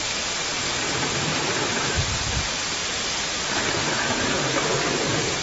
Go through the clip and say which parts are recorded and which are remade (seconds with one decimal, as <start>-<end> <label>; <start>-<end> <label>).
0.0-0.5 recorded; 0.5-2.2 remade; 2.2-2.8 recorded; 2.8-3.4 remade; 3.4-5.4 recorded